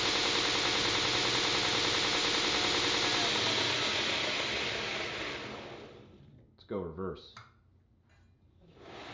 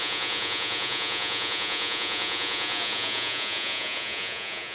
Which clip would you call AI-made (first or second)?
second